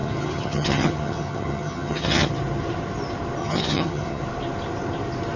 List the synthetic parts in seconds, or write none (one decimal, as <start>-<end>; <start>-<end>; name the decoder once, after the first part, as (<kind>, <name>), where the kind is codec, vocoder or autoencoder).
0.0-2.3 (vocoder, HiFi-GAN); 3.4-4.2